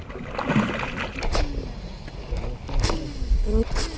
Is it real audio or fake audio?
real